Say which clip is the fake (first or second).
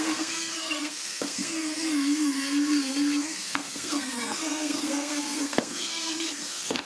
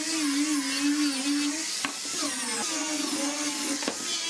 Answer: first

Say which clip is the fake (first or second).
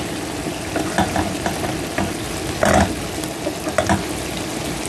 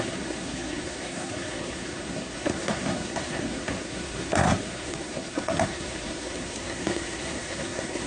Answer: second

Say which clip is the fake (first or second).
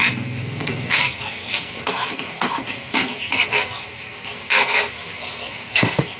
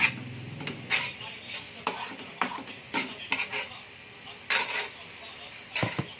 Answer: first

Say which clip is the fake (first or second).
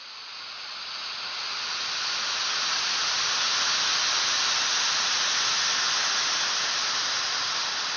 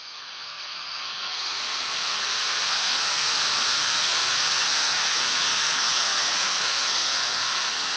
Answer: second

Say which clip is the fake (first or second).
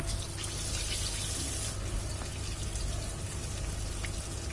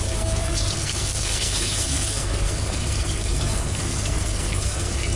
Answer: second